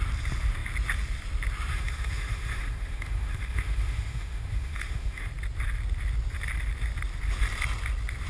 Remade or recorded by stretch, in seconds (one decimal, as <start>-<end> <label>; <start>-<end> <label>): 0.0-1.7 recorded; 1.7-5.3 remade; 5.3-8.3 recorded